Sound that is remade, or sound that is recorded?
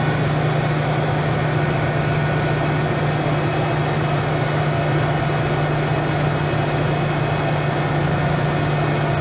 recorded